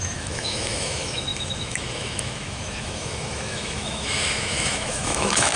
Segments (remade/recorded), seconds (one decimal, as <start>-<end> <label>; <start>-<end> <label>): 0.0-5.6 remade